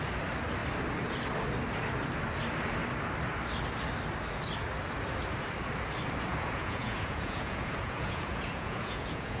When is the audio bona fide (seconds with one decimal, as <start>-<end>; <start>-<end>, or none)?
0.0-6.3